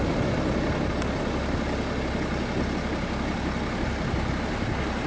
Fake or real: real